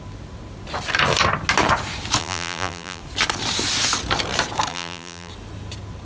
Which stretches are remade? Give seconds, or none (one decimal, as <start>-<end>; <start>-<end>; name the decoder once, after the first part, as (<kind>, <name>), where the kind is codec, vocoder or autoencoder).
2.2-3.0 (vocoder, BigVGAN v2); 4.7-5.3